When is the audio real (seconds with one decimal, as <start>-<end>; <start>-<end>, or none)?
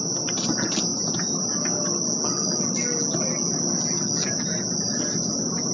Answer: 0.0-5.7